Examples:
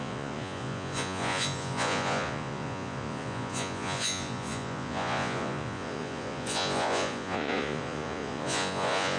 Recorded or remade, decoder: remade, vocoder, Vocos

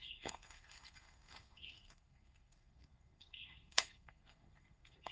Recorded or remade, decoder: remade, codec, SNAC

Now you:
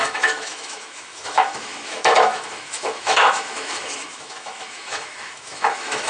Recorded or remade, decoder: remade, autoencoder, DAC-VAE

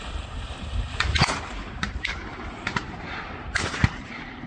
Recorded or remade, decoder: remade, vocoder, BigVGAN v2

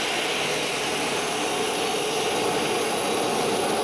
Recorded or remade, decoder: recorded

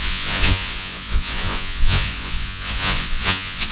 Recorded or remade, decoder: remade, vocoder, Vocos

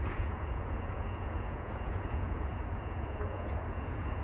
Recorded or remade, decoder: remade, vocoder, Vocos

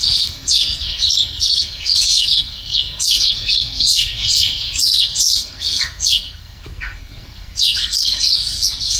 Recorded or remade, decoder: remade, codec, SNAC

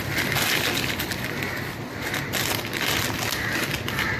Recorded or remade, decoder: recorded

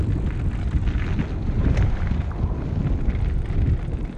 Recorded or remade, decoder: recorded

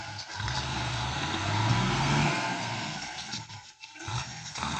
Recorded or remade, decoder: remade, codec, SNAC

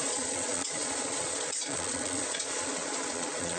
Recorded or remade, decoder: remade, vocoder, Vocos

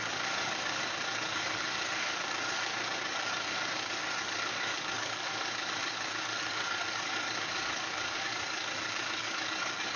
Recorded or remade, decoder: remade, codec, DAC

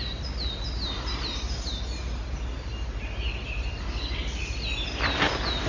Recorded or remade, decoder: recorded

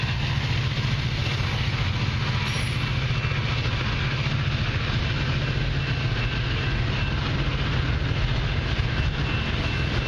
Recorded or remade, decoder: recorded